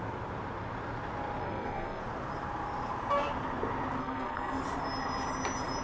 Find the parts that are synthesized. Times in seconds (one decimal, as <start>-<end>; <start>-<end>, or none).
1.4-2.0; 4.0-4.6